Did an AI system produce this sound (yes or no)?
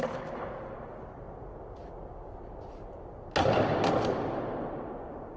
no